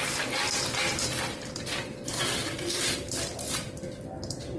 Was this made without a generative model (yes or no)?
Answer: yes